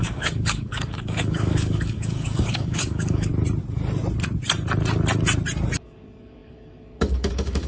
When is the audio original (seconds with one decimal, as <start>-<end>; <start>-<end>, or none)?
3.3-5.8